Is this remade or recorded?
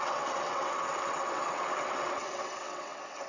remade